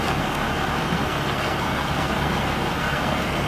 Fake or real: fake